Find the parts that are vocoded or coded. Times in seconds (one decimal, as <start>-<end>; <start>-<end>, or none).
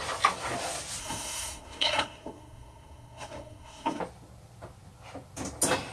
1.0-4.0